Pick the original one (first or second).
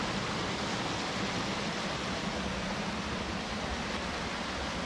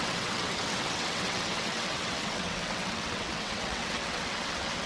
first